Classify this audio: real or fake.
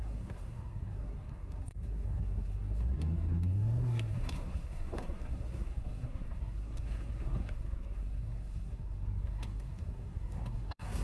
fake